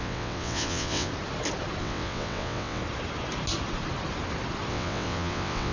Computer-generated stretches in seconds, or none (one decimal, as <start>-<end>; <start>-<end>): 0.0-1.1; 1.8-2.8; 4.7-5.7